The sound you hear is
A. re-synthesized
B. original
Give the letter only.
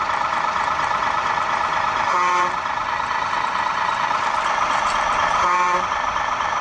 A